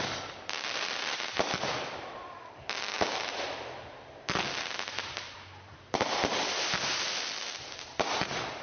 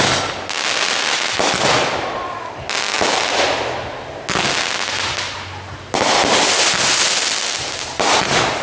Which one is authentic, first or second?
second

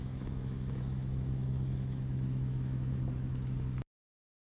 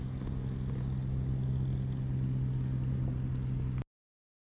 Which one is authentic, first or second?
second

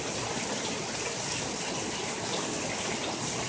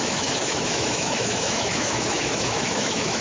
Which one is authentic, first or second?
first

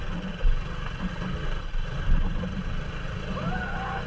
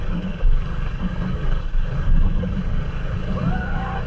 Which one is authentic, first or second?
first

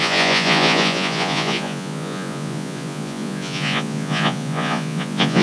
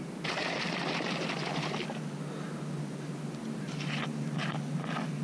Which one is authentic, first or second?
second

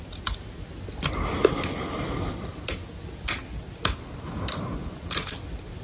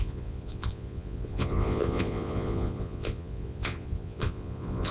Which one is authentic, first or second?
first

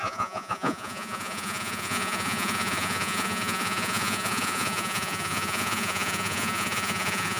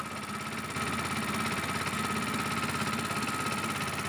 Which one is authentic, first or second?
second